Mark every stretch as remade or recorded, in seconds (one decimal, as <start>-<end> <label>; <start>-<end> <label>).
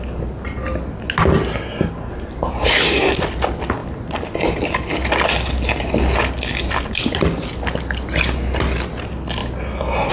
0.0-10.1 recorded